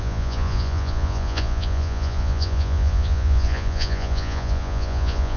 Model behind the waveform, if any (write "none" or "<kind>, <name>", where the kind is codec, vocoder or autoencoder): vocoder, Vocos